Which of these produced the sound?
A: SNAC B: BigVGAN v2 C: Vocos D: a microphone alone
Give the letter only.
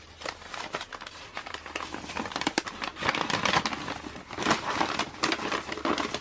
D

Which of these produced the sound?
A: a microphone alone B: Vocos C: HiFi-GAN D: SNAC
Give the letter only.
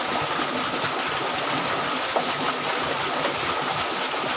A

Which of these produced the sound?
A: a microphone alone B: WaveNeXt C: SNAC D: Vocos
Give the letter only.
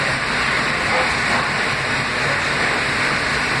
A